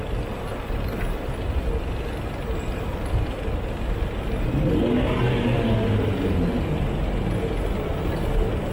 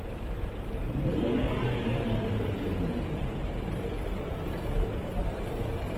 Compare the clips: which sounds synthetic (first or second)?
second